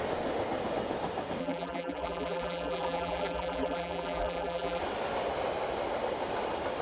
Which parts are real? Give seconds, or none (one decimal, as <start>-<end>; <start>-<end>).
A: 0.0-1.4; 4.8-6.8